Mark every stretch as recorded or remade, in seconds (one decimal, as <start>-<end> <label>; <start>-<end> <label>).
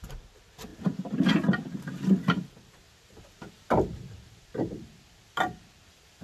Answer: 0.0-6.2 recorded